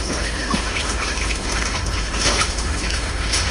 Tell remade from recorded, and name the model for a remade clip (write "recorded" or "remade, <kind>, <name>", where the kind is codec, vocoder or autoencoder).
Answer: remade, autoencoder, DAC-VAE